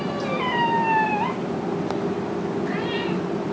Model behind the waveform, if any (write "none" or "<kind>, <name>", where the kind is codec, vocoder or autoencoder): none